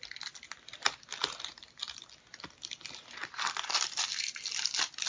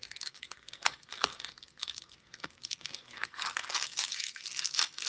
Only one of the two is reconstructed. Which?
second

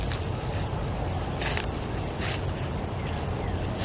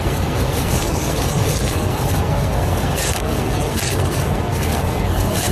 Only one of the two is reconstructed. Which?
second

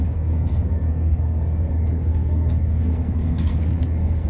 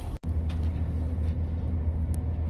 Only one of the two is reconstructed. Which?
first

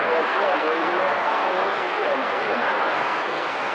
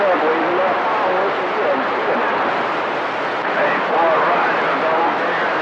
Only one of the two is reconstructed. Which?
first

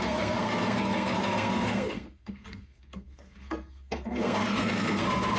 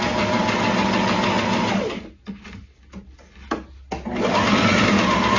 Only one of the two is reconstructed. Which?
first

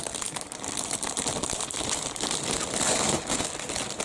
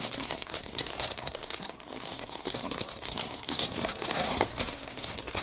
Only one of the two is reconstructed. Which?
second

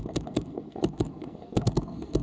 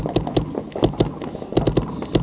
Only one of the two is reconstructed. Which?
first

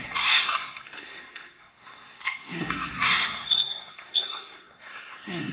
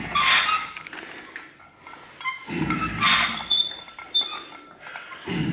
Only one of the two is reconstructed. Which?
first